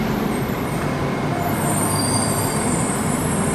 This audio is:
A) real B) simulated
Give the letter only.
B